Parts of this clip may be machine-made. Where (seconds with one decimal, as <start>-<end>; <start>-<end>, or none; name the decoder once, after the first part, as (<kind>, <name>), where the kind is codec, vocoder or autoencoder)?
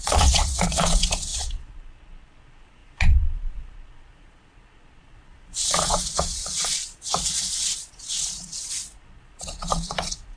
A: 0.0-10.4 (vocoder, Vocos)